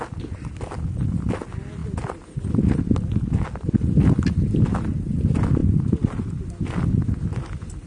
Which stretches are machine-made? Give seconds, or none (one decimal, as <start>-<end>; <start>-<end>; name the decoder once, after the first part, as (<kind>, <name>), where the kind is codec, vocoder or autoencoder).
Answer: none